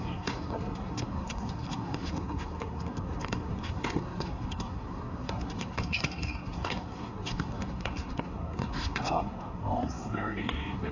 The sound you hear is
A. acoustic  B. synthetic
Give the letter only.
B